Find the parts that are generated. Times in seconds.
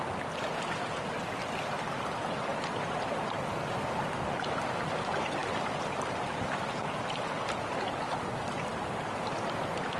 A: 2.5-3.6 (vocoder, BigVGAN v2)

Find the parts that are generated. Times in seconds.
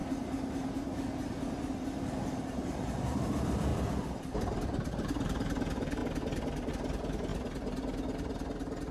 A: 2.5-3.7 (vocoder, BigVGAN v2); 4.2-6.0; 6.7-7.3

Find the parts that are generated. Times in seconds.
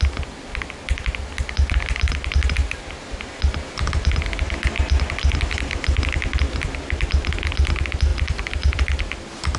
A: 8.1-8.8 (vocoder, BigVGAN v2)